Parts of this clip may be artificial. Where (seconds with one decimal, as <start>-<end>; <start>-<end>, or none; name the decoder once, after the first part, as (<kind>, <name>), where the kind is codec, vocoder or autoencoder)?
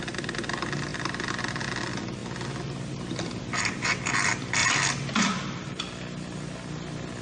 4.6-5.8 (vocoder, BigVGAN v2)